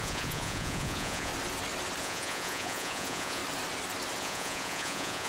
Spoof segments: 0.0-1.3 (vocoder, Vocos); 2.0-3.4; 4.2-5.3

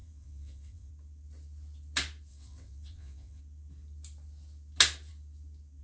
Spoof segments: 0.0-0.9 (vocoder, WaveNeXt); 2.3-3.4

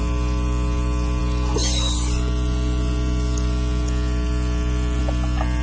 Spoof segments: none

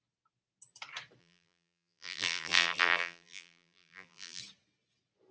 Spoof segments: 1.2-4.4 (vocoder, BigVGAN v2)

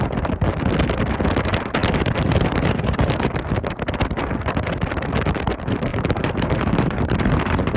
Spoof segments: 1.8-3.3 (vocoder, BigVGAN v2); 5.9-7.8

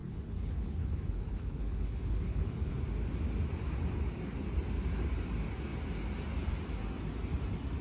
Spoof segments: 0.0-2.7 (codec, HILCodec)